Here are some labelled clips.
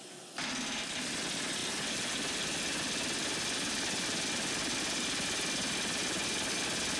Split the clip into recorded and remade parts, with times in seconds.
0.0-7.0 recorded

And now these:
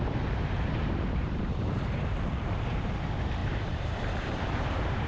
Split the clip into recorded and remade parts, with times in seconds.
0.0-5.1 remade

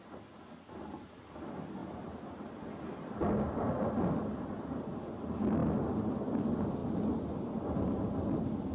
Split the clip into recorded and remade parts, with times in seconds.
0.0-1.8 recorded; 1.8-2.4 remade; 2.4-5.6 recorded; 5.6-6.1 remade; 6.1-8.7 recorded